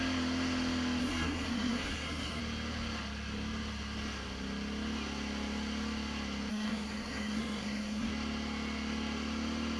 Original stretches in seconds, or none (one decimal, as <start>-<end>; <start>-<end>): 0.0-1.0; 2.4-6.5; 8.1-9.8